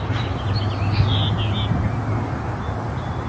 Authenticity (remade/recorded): recorded